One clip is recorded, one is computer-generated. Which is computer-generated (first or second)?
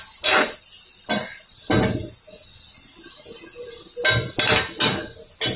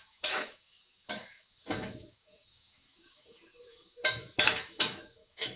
second